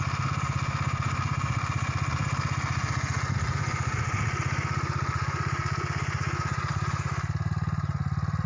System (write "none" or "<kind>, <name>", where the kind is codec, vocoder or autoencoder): none